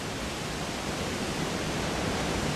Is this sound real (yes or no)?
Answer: yes